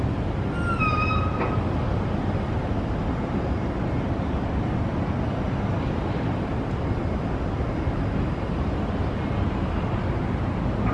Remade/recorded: recorded